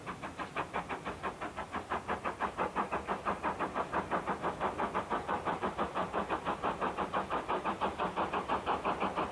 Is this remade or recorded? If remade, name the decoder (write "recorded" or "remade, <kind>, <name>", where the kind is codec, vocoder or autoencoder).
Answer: recorded